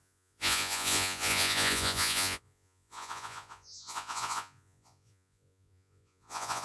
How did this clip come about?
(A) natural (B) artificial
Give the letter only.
B